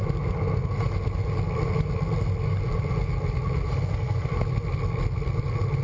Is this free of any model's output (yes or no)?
yes